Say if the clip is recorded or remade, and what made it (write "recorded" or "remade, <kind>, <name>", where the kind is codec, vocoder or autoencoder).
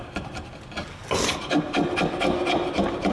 recorded